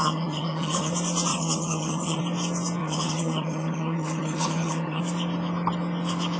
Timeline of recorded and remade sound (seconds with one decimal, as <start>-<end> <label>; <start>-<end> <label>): 0.0-0.9 remade; 0.9-1.3 recorded; 1.3-2.2 remade; 2.2-2.8 recorded; 2.8-5.0 remade; 5.0-6.4 recorded

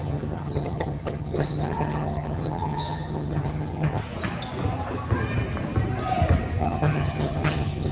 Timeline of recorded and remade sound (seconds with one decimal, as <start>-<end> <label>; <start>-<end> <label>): 0.0-4.0 remade; 4.0-6.6 recorded; 6.6-7.9 remade